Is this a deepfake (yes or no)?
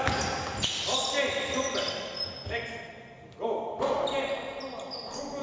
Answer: no